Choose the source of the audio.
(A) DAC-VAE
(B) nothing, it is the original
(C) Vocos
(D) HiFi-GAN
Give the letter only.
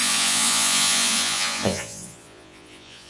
C